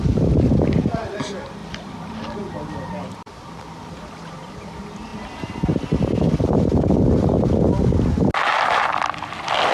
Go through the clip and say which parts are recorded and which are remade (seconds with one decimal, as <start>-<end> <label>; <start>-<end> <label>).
0.0-1.6 recorded; 1.6-3.9 remade; 3.9-5.1 recorded; 5.1-7.3 remade; 7.3-9.7 recorded